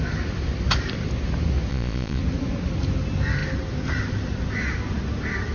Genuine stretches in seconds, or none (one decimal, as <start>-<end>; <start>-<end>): 0.0-1.7; 2.2-5.5